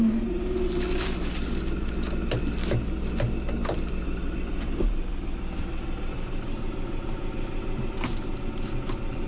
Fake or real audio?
real